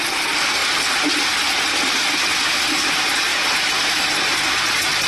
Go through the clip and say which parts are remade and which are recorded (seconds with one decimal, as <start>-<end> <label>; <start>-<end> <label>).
0.0-5.1 recorded